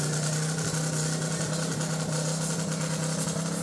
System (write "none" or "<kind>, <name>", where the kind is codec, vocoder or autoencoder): none